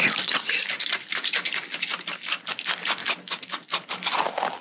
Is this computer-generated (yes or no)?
no